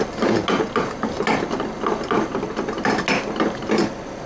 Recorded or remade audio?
recorded